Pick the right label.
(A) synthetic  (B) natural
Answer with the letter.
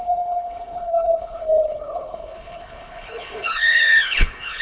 A